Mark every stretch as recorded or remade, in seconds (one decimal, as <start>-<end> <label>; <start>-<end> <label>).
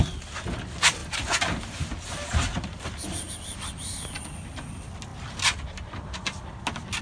0.0-1.0 recorded; 1.0-3.3 remade; 3.3-7.0 recorded